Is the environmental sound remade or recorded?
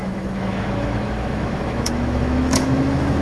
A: remade